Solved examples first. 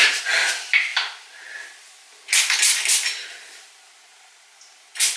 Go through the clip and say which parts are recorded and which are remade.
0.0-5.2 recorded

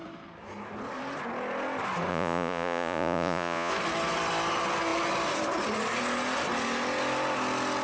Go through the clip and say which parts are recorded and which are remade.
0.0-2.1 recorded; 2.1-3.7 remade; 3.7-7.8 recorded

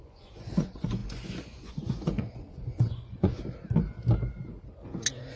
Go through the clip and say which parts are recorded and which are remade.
0.0-3.4 remade; 3.4-5.4 recorded